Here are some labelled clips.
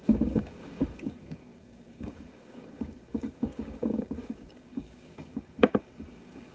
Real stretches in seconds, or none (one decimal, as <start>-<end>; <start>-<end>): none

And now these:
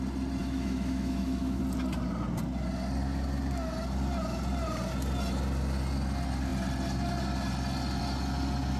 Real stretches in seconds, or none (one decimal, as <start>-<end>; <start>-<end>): 0.0-0.4; 1.6-8.8

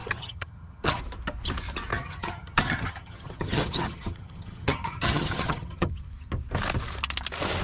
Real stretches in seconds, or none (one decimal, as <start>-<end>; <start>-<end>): 1.0-1.9; 5.9-7.6

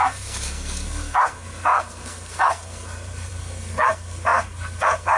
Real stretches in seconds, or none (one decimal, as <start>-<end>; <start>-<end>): none

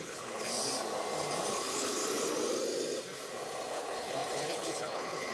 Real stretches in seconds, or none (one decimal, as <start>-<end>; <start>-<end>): 0.6-1.5; 2.0-3.7

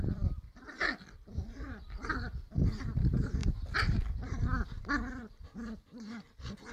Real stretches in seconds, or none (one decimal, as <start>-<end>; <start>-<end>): 0.0-6.7